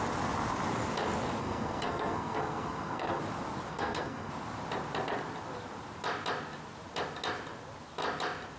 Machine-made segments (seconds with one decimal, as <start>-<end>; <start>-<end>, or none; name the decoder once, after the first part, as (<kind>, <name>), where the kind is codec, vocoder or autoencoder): 1.4-3.2 (codec, SNAC); 3.7-4.3